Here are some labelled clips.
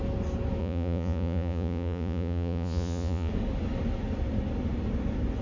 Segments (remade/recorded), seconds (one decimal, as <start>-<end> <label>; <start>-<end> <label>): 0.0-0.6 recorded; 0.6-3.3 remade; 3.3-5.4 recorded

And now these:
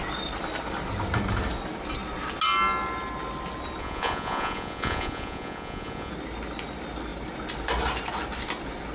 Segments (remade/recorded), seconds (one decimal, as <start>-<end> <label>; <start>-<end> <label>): 0.0-3.8 recorded; 3.8-6.1 remade; 6.1-8.9 recorded

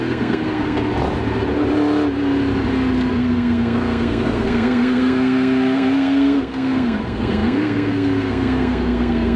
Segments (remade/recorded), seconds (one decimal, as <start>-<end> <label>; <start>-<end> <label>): 0.0-0.8 remade; 0.8-3.1 recorded; 3.1-9.4 remade